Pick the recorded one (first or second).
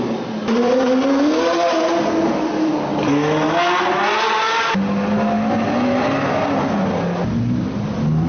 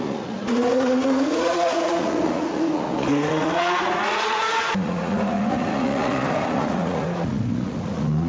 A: first